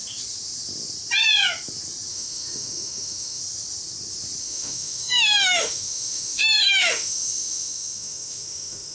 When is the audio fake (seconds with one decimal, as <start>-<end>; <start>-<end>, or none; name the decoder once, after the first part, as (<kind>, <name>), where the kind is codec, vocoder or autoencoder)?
2.1-3.4 (autoencoder, DAC-VAE); 4.4-8.9